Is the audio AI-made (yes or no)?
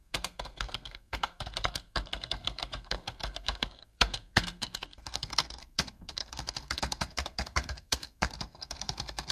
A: yes